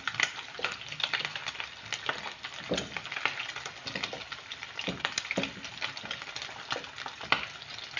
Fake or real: real